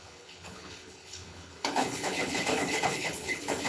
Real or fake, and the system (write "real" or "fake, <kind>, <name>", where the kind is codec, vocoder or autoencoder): fake, codec, HILCodec